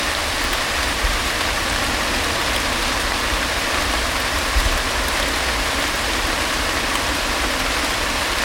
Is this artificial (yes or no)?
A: yes